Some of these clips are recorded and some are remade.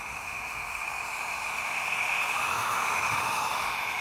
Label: remade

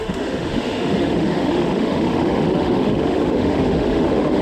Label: remade